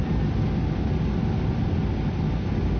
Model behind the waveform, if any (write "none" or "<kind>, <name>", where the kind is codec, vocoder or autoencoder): none